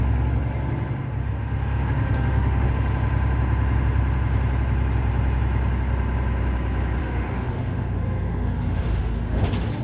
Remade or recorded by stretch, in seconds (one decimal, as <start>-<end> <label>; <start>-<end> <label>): 0.0-1.2 recorded; 1.2-2.7 remade; 2.7-7.0 recorded; 7.0-9.4 remade; 9.4-9.8 recorded